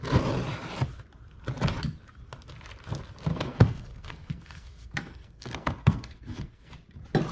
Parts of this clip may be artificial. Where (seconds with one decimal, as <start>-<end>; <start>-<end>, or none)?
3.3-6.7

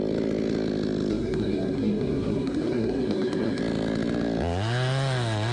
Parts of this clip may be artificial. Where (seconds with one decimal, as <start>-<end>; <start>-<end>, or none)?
1.1-3.6

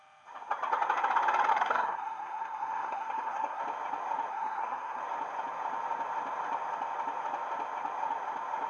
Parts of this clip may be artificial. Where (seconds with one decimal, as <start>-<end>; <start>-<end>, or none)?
1.5-3.6; 4.3-5.0

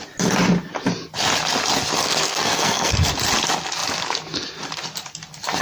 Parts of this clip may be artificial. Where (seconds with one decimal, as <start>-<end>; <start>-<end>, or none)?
2.0-3.1

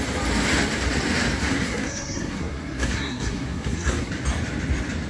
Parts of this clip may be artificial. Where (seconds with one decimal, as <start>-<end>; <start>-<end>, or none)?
1.4-4.1

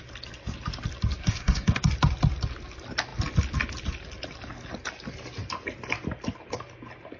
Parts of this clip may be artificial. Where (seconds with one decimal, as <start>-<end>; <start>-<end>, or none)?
1.2-1.8

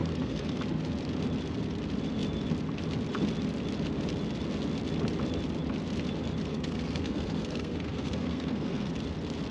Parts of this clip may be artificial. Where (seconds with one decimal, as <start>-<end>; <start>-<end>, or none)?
0.0-0.6; 6.5-8.9

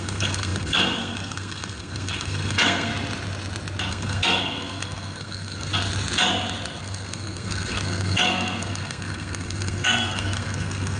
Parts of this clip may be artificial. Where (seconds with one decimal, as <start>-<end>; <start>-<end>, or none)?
0.0-2.9; 3.9-5.7; 6.8-11.0